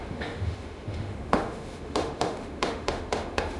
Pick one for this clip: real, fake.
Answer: fake